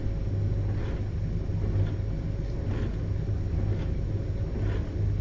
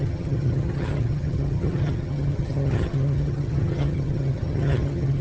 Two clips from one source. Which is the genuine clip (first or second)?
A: first